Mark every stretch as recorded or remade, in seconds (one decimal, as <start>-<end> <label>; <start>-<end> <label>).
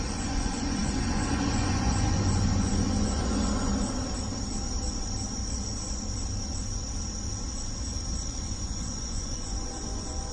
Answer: 0.0-3.7 remade; 3.7-8.4 recorded; 8.4-10.3 remade